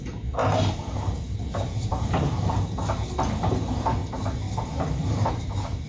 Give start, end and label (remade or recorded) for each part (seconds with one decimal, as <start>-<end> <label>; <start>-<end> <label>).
0.0-4.0 remade; 4.0-5.3 recorded; 5.3-5.9 remade